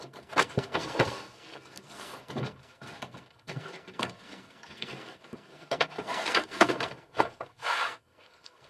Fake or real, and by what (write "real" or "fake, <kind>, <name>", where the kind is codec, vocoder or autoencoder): fake, codec, SNAC